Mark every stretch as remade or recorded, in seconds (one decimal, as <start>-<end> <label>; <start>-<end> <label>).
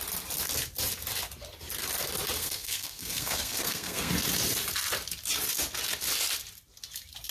0.0-2.4 recorded; 2.4-4.1 remade; 4.1-7.3 recorded